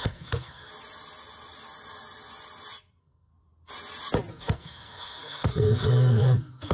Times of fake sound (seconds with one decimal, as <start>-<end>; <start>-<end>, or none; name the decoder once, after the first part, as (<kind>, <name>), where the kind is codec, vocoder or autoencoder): 0.0-0.7 (codec, SNAC); 2.9-3.3; 4.3-6.7